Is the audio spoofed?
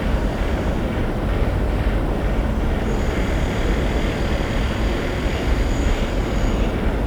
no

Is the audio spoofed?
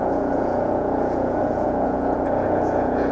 yes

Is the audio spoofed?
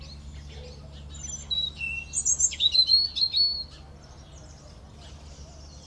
no